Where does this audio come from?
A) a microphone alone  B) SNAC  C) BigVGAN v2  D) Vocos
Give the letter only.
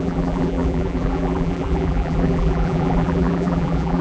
C